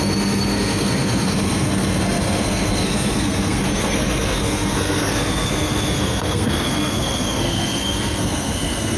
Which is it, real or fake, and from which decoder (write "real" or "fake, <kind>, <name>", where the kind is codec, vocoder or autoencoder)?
fake, codec, SNAC